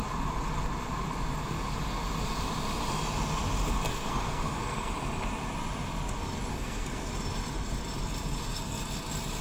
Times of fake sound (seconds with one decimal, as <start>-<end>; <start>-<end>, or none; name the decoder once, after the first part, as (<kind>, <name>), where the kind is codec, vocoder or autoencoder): 3.9-4.9 (codec, SNAC); 6.5-7.1